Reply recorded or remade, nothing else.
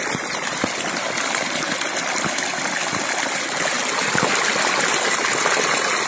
recorded